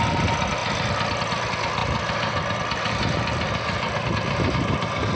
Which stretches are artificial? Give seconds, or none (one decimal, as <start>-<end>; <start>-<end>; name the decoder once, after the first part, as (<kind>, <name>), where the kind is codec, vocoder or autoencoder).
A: none